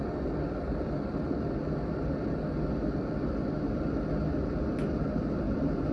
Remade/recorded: recorded